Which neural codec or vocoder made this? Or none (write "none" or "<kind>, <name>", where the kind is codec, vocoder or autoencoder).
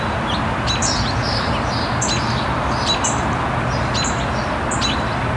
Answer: none